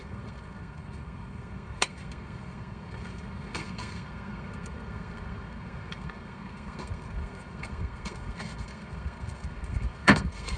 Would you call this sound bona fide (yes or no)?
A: no